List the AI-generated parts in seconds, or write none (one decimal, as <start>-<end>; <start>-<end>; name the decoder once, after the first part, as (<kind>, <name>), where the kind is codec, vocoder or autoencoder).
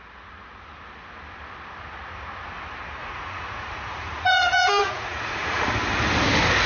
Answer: 3.0-5.7 (vocoder, Vocos)